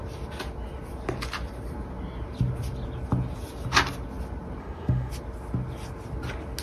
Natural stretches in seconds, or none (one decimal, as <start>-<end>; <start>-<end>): 0.0-4.6; 5.1-6.6